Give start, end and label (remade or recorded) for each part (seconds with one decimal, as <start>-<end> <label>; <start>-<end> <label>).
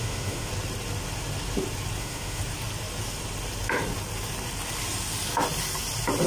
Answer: 0.0-0.5 remade; 0.5-2.0 recorded; 2.0-2.4 remade; 2.4-6.3 recorded